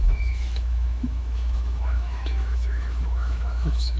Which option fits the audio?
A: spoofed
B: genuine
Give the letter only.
A